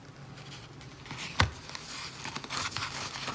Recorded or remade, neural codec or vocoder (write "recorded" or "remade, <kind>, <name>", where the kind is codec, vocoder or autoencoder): recorded